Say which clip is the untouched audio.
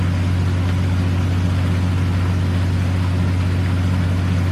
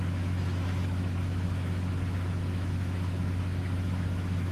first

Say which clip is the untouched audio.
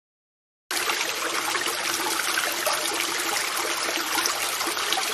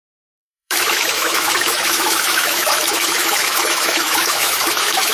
first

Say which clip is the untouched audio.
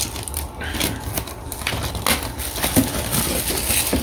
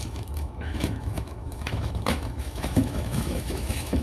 first